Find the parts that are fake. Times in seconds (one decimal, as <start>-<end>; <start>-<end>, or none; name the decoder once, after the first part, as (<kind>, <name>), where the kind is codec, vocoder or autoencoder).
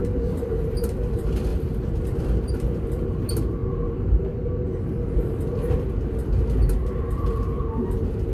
1.5-2.2 (vocoder, BigVGAN v2)